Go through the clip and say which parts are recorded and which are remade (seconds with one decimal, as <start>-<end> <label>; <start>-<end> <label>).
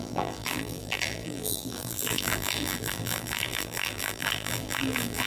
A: 0.0-5.3 remade